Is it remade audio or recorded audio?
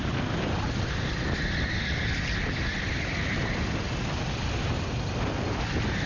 recorded